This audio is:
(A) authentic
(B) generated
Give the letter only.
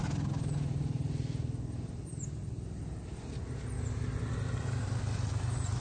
A